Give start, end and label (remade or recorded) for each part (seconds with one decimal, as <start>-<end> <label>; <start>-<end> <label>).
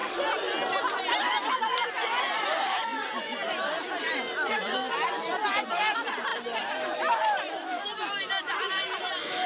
0.0-0.8 recorded; 0.8-9.5 remade